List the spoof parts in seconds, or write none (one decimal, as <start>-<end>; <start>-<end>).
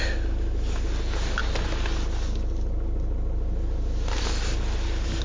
none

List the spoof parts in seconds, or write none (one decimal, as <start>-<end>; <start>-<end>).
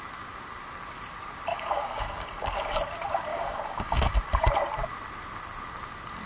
1.5-2.7; 3.3-4.1